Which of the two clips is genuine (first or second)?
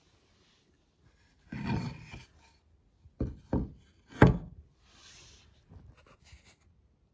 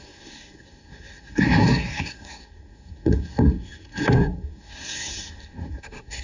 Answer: first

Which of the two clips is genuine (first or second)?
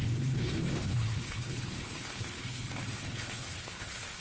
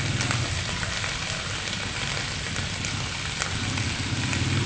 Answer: second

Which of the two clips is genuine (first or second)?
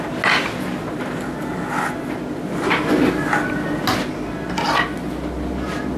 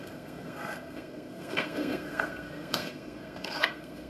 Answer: first